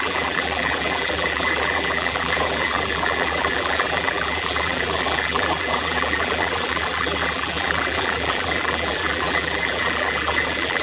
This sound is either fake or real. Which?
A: fake